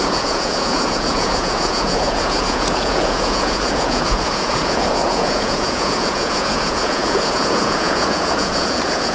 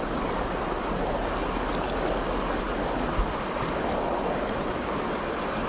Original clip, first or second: second